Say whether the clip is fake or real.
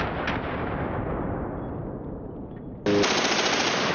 real